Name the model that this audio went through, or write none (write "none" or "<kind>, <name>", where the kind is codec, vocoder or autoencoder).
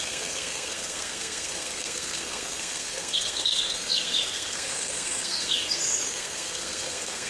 codec, SNAC